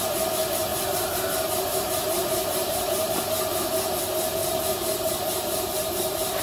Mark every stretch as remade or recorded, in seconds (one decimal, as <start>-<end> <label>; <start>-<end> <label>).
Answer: 0.0-0.7 recorded; 0.7-1.2 remade; 1.2-1.7 recorded; 1.7-3.1 remade; 3.1-4.4 recorded; 4.4-6.4 remade